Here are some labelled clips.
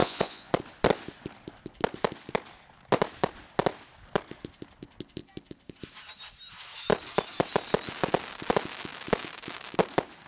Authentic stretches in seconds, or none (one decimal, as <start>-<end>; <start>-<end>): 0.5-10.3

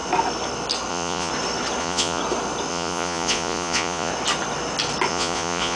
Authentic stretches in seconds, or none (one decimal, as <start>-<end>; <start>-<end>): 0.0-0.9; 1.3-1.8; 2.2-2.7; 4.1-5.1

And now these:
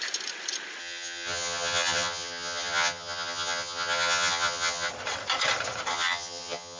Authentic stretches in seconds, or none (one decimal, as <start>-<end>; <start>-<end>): 0.0-0.8; 4.9-5.9

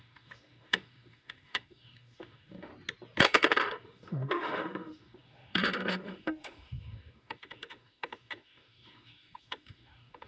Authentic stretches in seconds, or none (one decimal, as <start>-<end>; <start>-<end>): 2.7-3.2

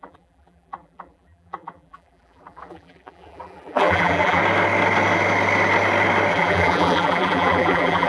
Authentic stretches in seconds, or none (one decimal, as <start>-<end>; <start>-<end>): 4.4-6.3

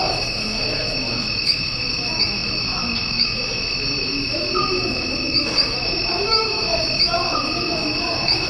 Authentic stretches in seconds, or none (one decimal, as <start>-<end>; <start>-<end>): none